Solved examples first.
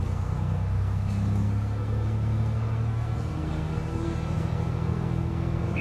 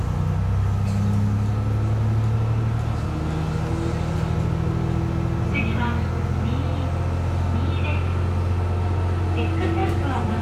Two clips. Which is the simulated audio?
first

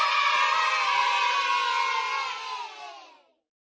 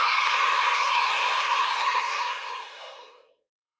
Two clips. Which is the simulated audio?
second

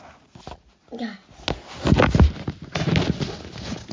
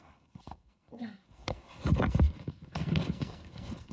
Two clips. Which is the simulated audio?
second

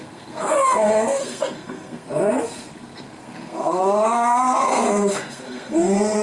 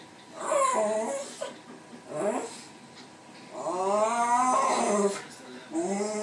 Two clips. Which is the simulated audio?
first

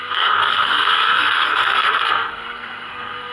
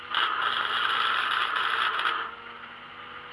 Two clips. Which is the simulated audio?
first